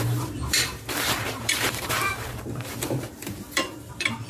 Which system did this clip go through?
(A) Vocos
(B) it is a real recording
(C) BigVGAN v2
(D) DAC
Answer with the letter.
C